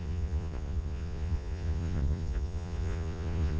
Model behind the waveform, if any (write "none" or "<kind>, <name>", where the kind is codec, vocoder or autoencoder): vocoder, Vocos